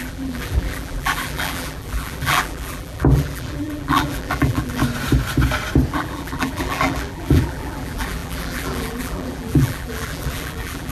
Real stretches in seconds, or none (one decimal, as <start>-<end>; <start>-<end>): 4.8-5.9